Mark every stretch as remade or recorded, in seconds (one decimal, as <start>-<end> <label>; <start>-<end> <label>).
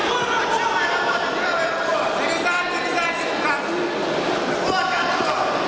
0.0-5.7 recorded